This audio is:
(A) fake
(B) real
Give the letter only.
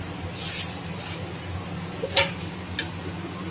B